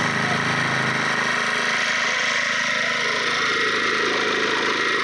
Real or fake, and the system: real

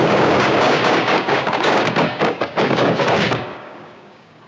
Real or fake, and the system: fake, codec, DAC